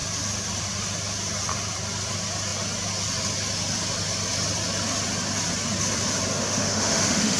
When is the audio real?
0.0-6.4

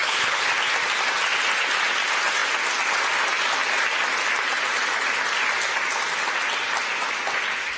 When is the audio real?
0.5-7.8

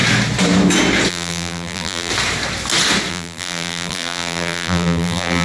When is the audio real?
0.0-1.1; 2.1-3.1

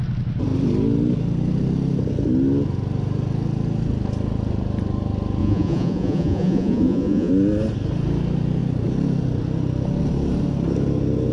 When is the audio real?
0.0-5.4; 7.3-11.3

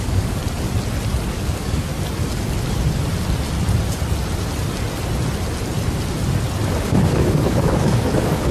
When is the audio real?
0.4-1.3; 1.9-6.8

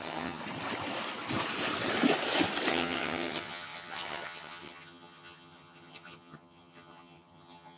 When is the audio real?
0.4-2.7

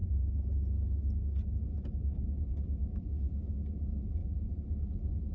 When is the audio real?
0.0-4.2; 4.7-5.3